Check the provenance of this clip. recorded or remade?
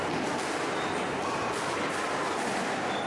recorded